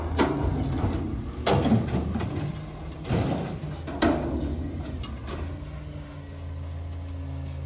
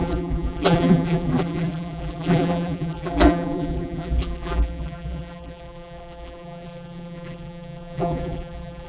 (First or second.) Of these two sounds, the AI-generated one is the second